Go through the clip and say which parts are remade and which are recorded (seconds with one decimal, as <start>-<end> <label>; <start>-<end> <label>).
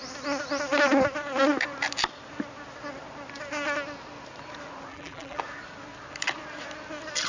0.0-4.9 recorded; 4.9-5.4 remade; 5.4-7.3 recorded